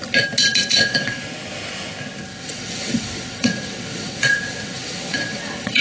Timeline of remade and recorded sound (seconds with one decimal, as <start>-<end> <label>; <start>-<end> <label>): 0.0-0.7 recorded; 0.7-1.2 remade; 1.2-2.3 recorded; 2.3-5.8 remade